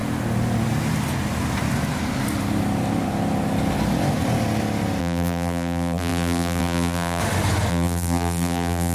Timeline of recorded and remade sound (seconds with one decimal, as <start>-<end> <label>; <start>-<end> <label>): 0.0-5.0 recorded; 5.0-7.2 remade; 7.2-7.7 recorded; 7.7-8.9 remade